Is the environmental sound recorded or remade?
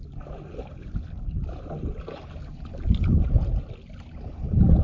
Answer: recorded